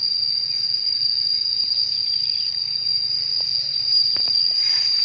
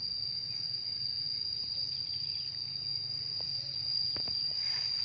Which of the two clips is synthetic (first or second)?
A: first